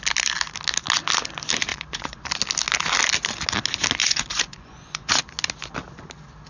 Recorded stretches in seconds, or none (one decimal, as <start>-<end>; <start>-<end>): 0.0-1.7; 2.3-4.0; 5.2-6.5